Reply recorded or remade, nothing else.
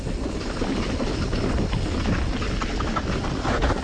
recorded